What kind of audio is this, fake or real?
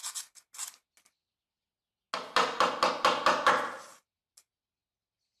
real